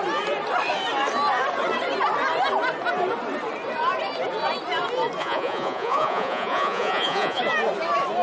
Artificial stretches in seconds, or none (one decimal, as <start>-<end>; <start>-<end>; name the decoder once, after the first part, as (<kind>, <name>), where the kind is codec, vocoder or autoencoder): 5.2-7.4 (vocoder, Vocos)